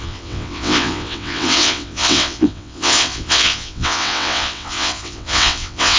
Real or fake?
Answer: fake